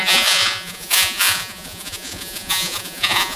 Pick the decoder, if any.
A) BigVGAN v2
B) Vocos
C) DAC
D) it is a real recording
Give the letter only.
B